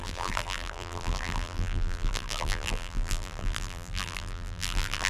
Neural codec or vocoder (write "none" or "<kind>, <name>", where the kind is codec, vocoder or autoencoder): vocoder, BigVGAN v2